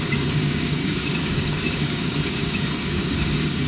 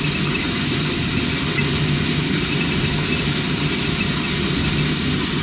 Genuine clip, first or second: second